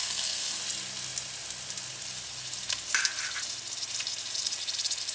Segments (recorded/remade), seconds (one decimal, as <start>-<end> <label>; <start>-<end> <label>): 0.0-0.6 remade; 0.6-5.1 recorded